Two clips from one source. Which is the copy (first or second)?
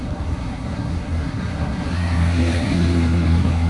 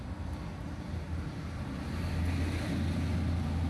first